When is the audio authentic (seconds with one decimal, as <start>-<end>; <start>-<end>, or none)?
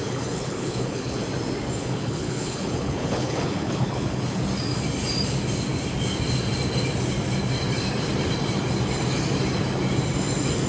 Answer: 1.2-1.8; 4.2-10.7